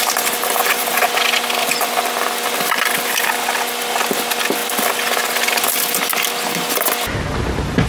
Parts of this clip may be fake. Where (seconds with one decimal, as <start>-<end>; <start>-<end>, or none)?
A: none